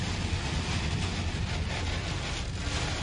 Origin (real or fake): real